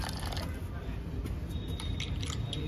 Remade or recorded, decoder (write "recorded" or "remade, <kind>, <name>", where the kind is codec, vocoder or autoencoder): recorded